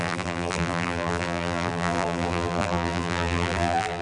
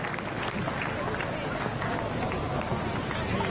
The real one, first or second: second